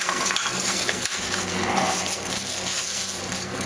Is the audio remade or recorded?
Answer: remade